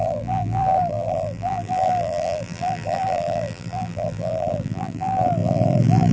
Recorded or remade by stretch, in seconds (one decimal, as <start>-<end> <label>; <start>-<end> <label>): 0.0-6.1 remade